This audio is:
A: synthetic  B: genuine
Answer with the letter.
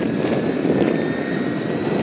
B